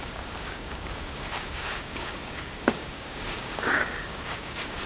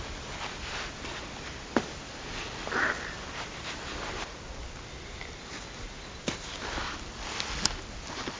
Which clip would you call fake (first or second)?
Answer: first